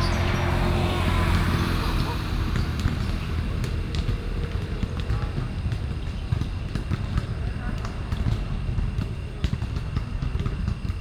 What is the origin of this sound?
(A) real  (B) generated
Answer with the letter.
A